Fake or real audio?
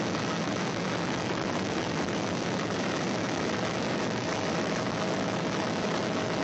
fake